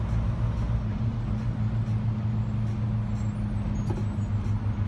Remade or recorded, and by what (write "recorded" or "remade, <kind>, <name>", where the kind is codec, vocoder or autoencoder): recorded